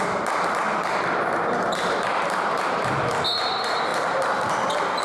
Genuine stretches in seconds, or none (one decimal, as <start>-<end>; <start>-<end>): 0.0-0.7; 3.0-3.9; 4.5-5.0